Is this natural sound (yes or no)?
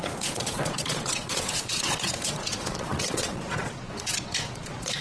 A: no